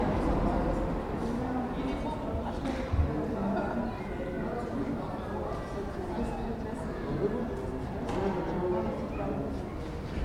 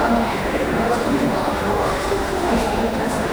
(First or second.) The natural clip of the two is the first